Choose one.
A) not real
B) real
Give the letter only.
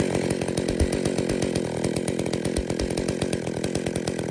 B